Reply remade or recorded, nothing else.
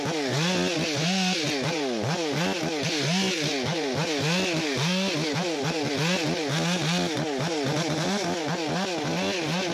recorded